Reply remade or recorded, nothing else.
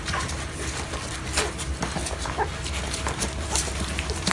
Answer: recorded